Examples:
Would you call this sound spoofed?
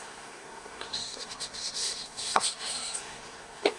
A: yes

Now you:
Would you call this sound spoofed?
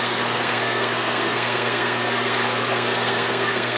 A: yes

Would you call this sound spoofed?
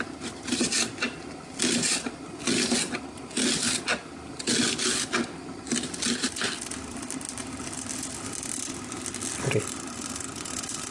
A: no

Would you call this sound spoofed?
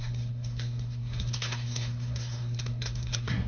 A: yes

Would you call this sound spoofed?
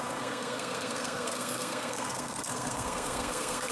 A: yes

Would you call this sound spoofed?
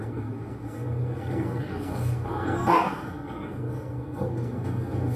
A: yes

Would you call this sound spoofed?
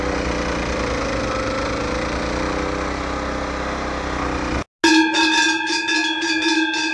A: no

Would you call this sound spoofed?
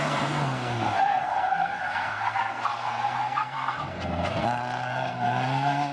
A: yes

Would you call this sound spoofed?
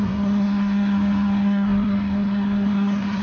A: yes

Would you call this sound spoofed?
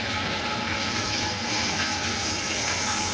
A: yes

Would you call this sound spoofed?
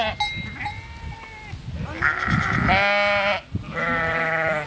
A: no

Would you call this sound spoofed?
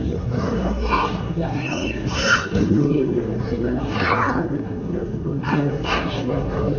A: yes